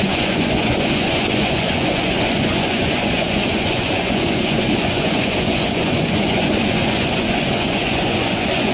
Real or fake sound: fake